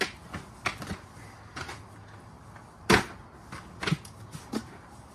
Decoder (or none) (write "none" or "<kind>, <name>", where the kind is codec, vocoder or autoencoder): none